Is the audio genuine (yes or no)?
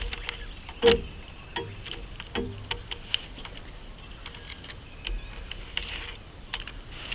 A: yes